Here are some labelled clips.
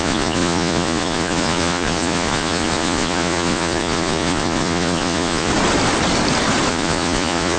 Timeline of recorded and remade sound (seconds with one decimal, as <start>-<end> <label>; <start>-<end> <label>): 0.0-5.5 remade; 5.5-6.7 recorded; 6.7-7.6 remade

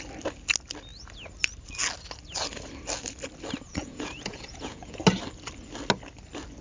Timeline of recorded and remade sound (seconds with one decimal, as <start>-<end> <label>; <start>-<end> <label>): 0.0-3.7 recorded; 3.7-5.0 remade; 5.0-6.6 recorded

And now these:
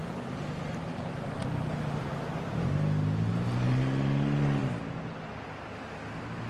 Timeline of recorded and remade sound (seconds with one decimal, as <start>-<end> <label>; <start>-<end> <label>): 0.0-6.5 recorded

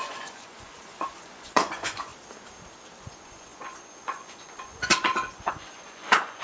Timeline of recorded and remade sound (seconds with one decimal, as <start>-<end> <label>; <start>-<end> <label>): 0.0-2.1 remade; 2.1-3.0 recorded; 3.0-6.4 remade

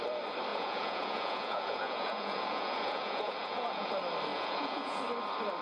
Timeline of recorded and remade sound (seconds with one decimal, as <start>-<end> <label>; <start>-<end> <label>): 0.0-0.5 recorded; 0.5-3.9 remade; 3.9-4.3 recorded; 4.3-5.0 remade; 5.0-5.6 recorded

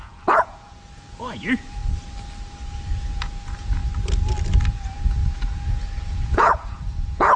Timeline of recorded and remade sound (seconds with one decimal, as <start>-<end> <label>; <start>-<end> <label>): 0.0-1.8 remade; 1.8-3.1 recorded; 3.1-3.8 remade; 3.8-4.7 recorded; 4.7-7.4 remade

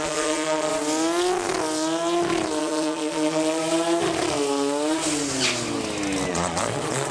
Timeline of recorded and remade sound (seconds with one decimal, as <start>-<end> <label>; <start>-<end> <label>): 0.0-0.7 remade; 0.7-2.6 recorded; 2.6-3.6 remade; 3.6-6.3 recorded; 6.3-7.1 remade